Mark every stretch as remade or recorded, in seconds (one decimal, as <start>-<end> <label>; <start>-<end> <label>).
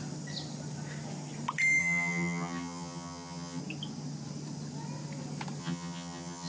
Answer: 0.0-1.8 recorded; 1.8-3.6 remade; 3.6-5.6 recorded; 5.6-6.5 remade